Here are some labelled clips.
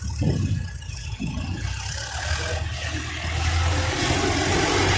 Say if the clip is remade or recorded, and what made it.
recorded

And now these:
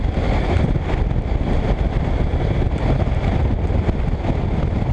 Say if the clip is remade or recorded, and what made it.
recorded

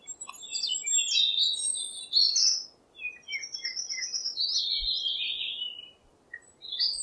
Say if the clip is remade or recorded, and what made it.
recorded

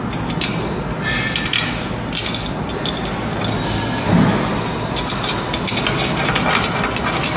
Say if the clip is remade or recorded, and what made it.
recorded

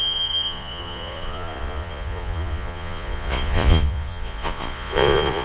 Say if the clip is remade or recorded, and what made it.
remade, vocoder, Vocos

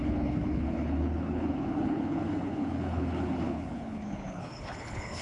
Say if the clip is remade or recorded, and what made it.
remade, codec, HILCodec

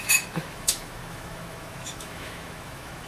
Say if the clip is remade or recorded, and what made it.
remade, autoencoder, DAC-VAE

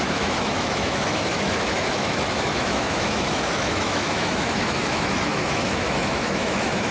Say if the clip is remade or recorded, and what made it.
remade, autoencoder, DAC-VAE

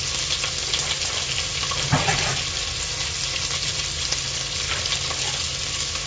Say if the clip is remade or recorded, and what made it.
recorded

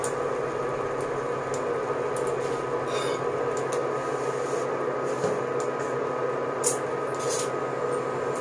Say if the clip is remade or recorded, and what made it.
recorded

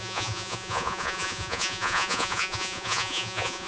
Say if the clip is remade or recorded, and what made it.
remade, vocoder, Vocos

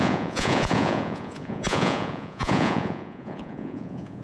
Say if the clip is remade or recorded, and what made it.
remade, vocoder, Vocos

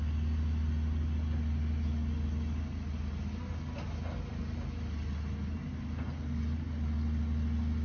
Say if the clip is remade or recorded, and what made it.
recorded